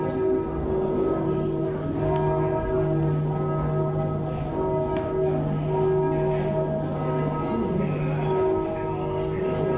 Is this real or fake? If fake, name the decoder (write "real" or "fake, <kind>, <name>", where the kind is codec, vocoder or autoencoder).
real